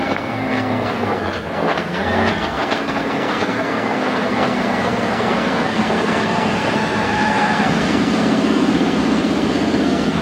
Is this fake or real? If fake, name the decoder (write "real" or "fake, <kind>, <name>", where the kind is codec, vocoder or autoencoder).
fake, codec, SNAC